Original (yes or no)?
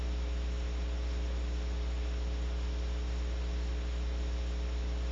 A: yes